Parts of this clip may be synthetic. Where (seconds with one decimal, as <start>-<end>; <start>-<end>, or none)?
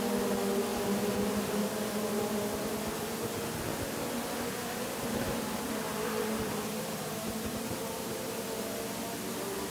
3.7-8.2